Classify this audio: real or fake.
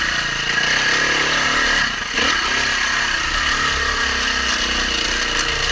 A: real